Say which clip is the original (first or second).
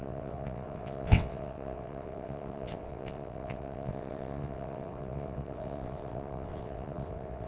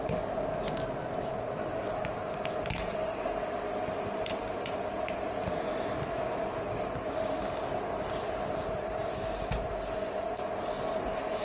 second